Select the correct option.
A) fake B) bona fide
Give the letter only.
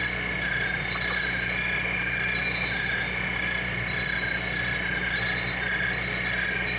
B